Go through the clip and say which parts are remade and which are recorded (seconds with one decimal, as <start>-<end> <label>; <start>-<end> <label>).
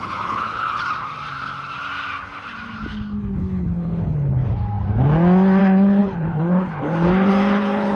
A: 0.0-0.8 remade; 0.8-3.2 recorded; 3.2-4.4 remade; 4.4-5.6 recorded; 5.6-8.0 remade